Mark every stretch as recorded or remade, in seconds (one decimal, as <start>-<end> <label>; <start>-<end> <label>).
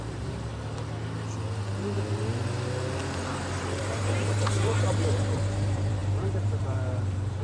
0.0-0.5 remade; 0.5-3.8 recorded; 3.8-7.4 remade